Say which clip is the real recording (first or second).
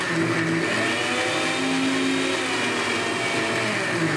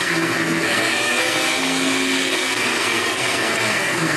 first